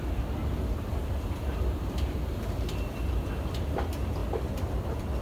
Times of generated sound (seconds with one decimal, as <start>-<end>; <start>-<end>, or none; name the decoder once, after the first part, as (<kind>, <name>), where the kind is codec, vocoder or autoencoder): 0.4-3.0 (vocoder, BigVGAN v2); 4.2-5.2

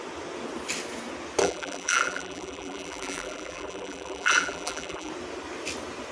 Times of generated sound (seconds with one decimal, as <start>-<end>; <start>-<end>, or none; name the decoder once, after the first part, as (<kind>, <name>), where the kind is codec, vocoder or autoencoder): 1.4-5.1 (vocoder, BigVGAN v2)